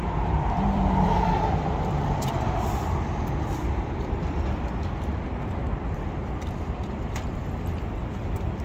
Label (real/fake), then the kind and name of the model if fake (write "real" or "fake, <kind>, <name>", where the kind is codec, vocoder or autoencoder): fake, vocoder, BigVGAN v2